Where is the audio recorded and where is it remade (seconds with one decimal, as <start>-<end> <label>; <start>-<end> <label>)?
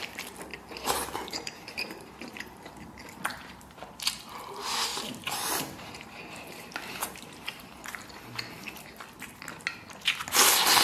0.0-0.5 recorded; 0.5-2.7 remade; 2.7-3.3 recorded; 3.3-4.2 remade; 4.2-4.9 recorded; 4.9-7.8 remade; 7.8-10.8 recorded